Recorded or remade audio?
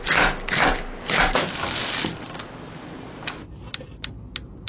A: recorded